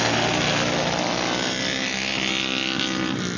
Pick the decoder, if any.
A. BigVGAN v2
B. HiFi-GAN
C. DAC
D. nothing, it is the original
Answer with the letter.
D